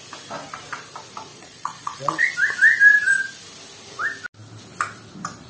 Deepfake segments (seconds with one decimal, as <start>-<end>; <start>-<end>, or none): 1.3-2.3